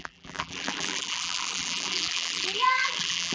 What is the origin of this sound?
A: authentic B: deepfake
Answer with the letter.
B